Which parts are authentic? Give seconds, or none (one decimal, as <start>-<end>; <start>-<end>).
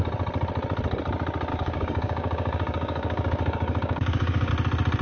0.0-1.5; 4.5-5.0